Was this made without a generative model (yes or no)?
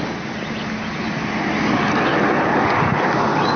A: yes